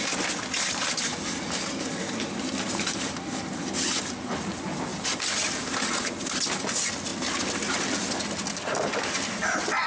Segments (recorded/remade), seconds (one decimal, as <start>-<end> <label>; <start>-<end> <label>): 0.0-9.9 recorded